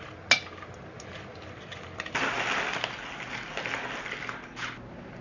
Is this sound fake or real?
real